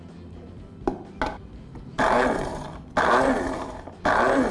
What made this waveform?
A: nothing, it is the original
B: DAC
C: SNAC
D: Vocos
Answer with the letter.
A